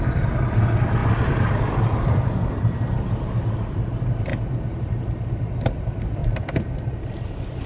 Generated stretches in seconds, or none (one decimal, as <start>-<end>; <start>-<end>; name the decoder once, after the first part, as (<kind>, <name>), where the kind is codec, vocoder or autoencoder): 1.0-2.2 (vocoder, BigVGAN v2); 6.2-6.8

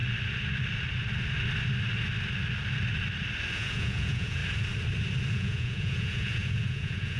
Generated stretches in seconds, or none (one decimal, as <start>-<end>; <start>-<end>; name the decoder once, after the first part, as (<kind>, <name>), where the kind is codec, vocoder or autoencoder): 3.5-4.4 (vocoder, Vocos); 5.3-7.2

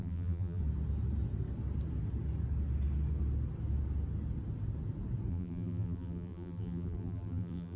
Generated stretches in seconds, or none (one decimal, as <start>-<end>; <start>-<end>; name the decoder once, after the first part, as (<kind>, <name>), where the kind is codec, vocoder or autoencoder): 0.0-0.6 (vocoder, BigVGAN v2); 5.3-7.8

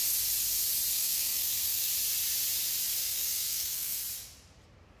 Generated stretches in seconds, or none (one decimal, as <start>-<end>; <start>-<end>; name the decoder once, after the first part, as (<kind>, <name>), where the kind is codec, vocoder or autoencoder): 0.9-1.9 (codec, SNAC); 3.0-4.0

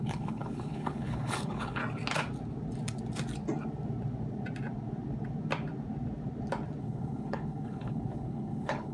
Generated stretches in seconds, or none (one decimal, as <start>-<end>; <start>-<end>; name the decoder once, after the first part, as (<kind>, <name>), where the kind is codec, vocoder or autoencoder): 0.0-1.8 (codec, HILCodec); 6.8-8.9

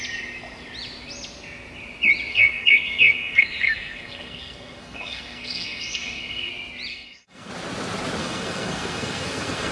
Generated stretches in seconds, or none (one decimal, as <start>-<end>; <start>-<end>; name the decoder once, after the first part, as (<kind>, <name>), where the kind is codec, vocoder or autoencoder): 2.3-6.5 (codec, SNAC); 6.9-7.5; 8.2-9.7

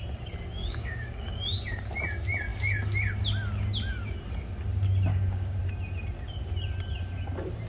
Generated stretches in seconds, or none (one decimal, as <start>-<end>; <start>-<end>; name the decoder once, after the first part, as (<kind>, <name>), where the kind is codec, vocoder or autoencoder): 0.6-1.4 (codec, DAC); 5.1-5.6

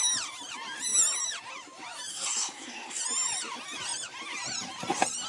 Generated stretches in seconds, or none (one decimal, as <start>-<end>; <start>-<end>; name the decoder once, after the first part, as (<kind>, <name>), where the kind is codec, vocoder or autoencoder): 2.1-3.0 (codec, SNAC)